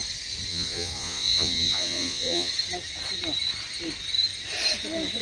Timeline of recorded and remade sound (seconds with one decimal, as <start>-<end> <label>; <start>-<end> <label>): 0.0-0.5 recorded; 0.5-2.5 remade; 2.5-5.2 recorded